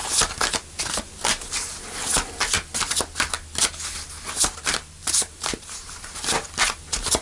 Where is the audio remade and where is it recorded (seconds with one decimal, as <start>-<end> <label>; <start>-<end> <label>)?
0.0-5.0 recorded; 5.0-6.8 remade; 6.8-7.2 recorded